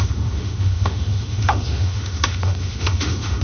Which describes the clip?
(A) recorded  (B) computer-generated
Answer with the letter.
B